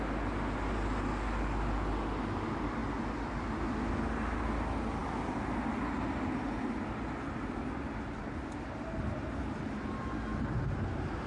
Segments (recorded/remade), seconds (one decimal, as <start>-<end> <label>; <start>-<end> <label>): 0.0-11.3 recorded